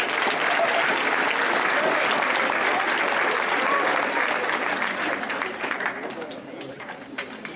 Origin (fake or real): real